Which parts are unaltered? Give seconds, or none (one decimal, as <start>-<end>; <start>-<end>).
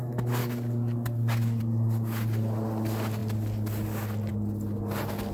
0.0-0.4; 1.6-5.3